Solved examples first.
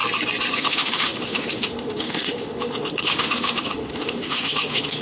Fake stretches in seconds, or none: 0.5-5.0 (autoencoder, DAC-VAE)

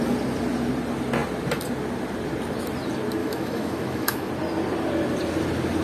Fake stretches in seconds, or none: 3.2-4.3 (autoencoder, DAC-VAE)

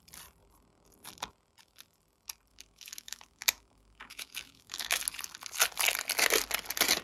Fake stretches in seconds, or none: 2.5-5.0 (autoencoder, DAC-VAE)

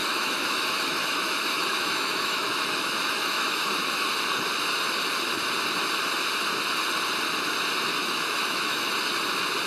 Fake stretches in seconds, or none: 0.0-4.1 (autoencoder, DAC-VAE); 8.0-8.9

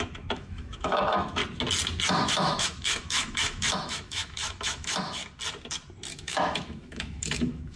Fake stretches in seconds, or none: 0.0-1.4 (autoencoder, DAC-VAE); 2.1-5.2; 6.1-7.8